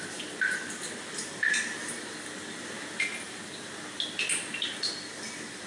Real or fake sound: real